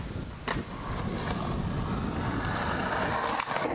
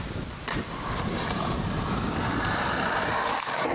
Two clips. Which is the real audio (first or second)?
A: first